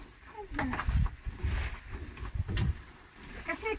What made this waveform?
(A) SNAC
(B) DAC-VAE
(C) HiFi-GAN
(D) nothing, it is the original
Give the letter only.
D